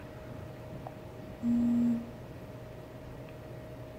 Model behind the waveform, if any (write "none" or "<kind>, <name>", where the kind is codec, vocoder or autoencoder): none